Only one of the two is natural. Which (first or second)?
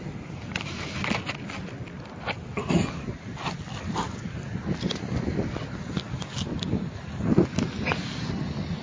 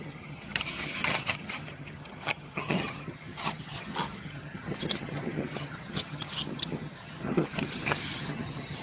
first